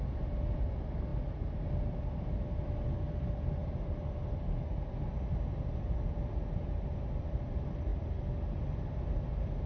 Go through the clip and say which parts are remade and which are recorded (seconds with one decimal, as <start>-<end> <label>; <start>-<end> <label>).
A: 0.0-9.7 recorded